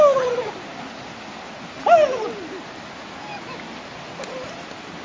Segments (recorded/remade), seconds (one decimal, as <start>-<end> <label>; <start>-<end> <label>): 0.0-5.0 recorded